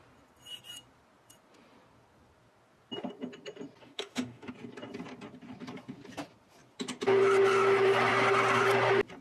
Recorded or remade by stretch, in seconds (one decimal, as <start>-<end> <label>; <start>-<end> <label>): 0.0-3.8 recorded; 3.8-4.5 remade; 4.5-9.2 recorded